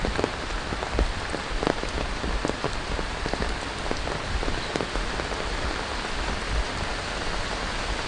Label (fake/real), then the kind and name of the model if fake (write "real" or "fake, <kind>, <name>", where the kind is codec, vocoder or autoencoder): real